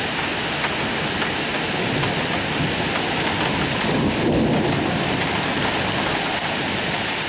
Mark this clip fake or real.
real